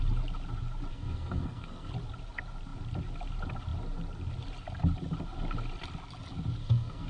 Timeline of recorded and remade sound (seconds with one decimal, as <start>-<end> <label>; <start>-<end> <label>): 0.0-0.9 recorded; 0.9-1.9 remade; 1.9-6.6 recorded; 6.6-7.1 remade